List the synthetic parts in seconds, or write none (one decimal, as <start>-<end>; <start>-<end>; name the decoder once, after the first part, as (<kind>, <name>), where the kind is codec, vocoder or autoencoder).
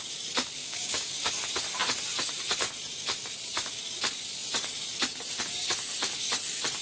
0.6-1.3 (codec, DAC)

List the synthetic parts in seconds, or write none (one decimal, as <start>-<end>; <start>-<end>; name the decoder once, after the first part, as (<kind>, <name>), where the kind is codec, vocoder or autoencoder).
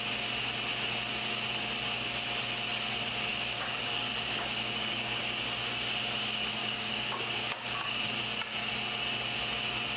3.3-5.2 (codec, DAC); 6.6-8.7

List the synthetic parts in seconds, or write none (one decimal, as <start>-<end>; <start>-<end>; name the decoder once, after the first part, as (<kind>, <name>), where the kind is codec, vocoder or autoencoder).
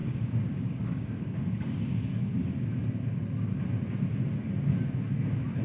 0.0-1.9 (codec, DAC)